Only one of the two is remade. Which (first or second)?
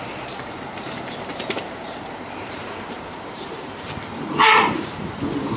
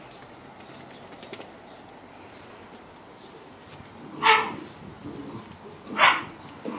first